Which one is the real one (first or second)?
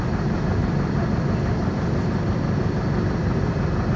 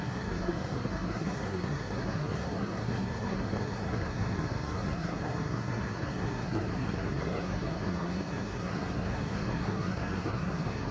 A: first